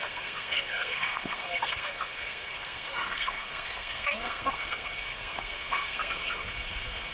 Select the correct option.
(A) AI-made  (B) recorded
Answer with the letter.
A